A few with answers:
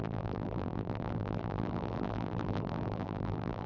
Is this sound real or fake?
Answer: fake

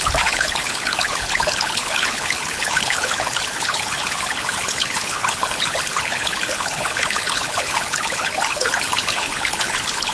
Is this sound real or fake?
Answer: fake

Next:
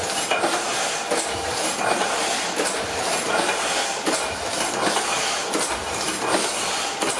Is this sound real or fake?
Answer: fake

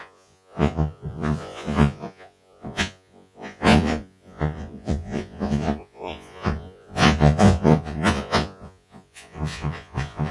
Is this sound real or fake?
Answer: fake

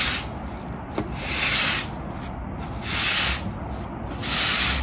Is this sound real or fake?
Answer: real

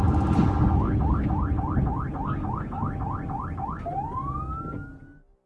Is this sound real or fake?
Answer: real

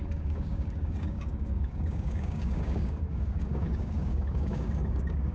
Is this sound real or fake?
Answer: fake